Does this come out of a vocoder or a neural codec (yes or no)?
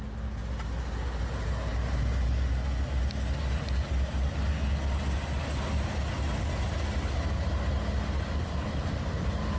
no